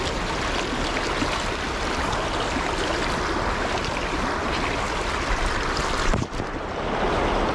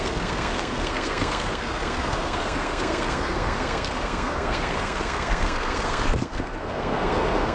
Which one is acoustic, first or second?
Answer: first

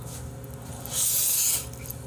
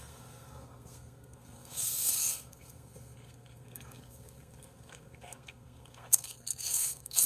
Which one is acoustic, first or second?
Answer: first